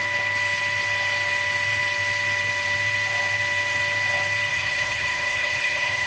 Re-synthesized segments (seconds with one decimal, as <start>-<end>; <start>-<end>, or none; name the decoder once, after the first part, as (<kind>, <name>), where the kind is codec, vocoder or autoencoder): 4.5-6.1 (codec, HILCodec)